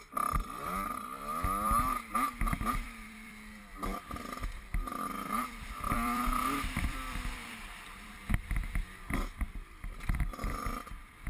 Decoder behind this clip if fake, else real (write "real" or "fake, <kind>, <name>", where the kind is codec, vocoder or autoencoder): fake, vocoder, BigVGAN v2